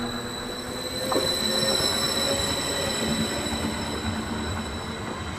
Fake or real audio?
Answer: real